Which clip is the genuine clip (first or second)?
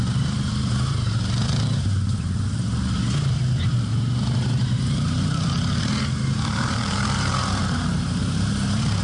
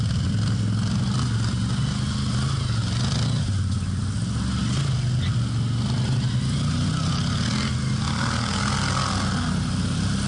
second